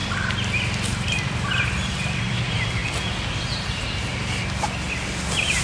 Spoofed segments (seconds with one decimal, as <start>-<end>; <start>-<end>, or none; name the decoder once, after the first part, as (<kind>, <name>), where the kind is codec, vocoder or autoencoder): 1.5-2.8 (vocoder, BigVGAN v2); 3.5-4.1